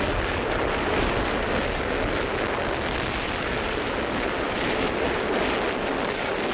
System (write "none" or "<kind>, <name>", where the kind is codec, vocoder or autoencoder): none